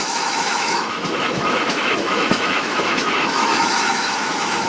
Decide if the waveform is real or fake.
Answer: fake